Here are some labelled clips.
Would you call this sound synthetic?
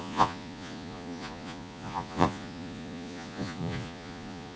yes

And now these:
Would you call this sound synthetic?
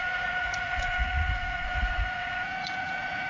yes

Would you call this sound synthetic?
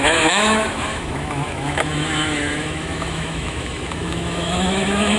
yes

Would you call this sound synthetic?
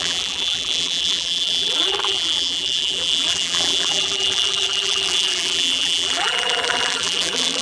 yes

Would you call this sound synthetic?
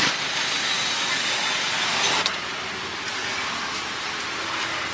no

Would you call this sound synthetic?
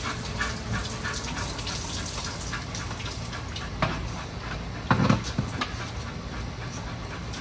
no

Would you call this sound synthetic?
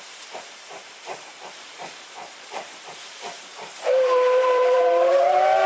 yes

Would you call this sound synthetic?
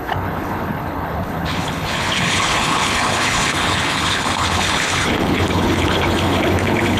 yes